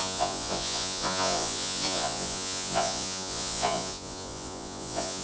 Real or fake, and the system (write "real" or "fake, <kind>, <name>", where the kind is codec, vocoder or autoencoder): fake, vocoder, Vocos